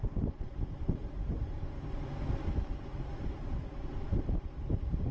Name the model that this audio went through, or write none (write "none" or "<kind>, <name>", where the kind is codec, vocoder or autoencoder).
vocoder, BigVGAN v2